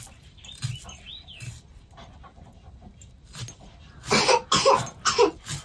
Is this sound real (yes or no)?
yes